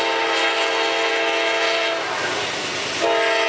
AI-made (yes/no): no